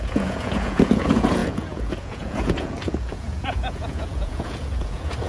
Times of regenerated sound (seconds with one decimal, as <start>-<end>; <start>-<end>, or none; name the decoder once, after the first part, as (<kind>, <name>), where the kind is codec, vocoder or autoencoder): 0.0-5.3 (vocoder, Vocos)